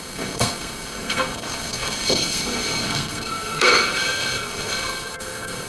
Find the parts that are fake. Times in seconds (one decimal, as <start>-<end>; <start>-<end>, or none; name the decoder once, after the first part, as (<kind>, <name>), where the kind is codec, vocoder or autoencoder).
0.0-5.7 (codec, SNAC)